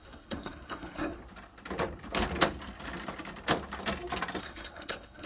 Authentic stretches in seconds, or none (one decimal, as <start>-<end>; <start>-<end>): 1.2-4.4